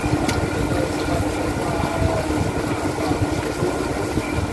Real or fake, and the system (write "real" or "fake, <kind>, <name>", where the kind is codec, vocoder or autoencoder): real